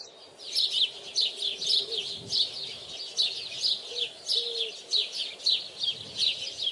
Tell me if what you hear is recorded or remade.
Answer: recorded